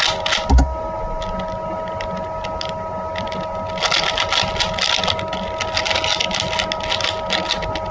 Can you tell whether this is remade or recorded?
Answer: recorded